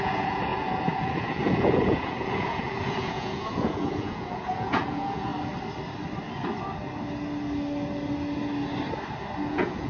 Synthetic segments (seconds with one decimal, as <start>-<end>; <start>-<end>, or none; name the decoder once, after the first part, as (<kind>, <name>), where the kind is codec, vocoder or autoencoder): 0.0-5.3 (vocoder, Vocos); 9.5-9.9